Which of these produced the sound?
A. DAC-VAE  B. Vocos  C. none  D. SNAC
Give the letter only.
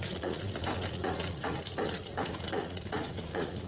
B